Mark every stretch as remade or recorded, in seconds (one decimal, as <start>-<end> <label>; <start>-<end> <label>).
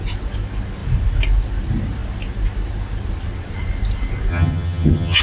0.0-4.3 recorded; 4.3-5.2 remade